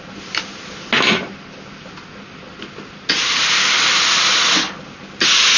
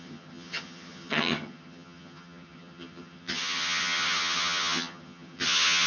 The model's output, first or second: second